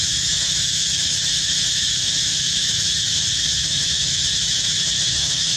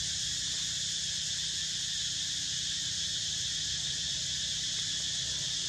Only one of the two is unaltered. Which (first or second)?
second